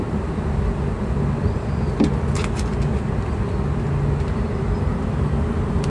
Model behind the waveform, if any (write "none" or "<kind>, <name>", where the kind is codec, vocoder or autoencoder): none